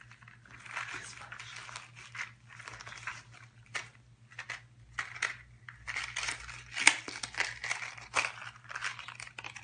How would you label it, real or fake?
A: real